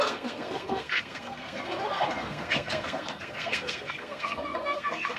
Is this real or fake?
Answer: fake